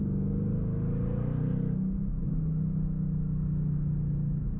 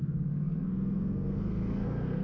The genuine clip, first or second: first